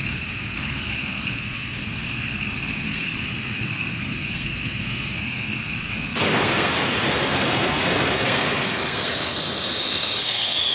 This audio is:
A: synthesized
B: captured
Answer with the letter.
A